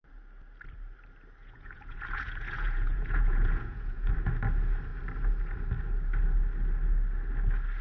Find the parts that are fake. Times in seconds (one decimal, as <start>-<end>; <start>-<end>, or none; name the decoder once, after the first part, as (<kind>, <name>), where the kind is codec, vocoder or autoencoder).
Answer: 1.4-4.1 (vocoder, Vocos)